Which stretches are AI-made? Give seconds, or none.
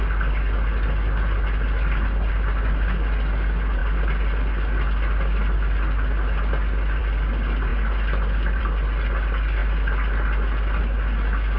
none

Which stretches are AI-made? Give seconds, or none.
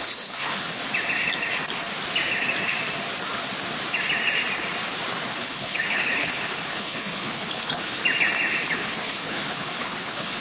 0.0-0.8 (codec, HILCodec); 5.3-8.0; 8.7-10.4